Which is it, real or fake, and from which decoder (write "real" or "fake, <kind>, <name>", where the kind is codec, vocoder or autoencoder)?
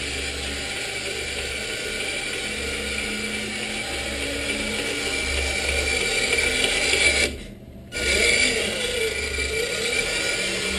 real